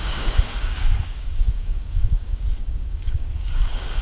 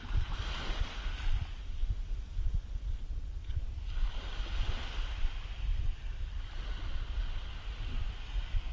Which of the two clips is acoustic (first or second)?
second